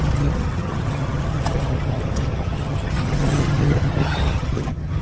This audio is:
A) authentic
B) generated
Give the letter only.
B